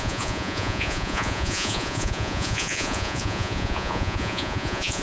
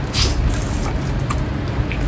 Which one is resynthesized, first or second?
first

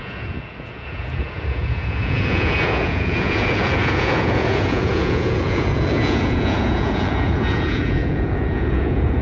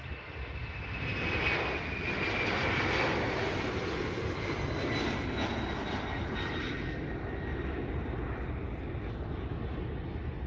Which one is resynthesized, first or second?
first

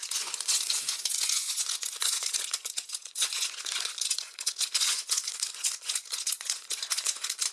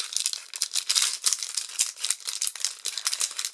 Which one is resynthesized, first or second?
first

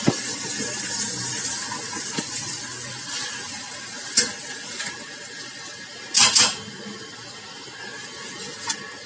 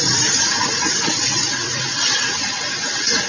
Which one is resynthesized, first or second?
second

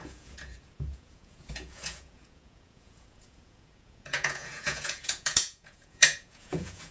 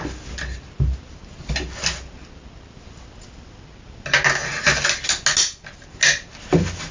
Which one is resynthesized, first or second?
first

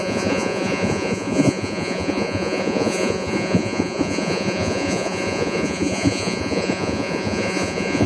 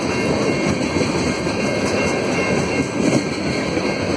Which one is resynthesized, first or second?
first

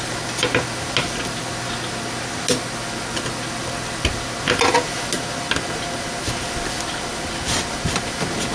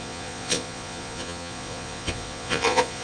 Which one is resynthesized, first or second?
second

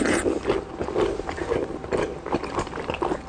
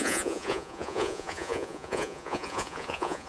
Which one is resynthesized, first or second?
second